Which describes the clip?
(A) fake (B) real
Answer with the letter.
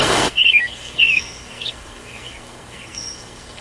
A